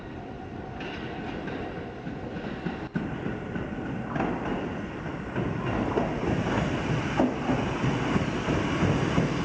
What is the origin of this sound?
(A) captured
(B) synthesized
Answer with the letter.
A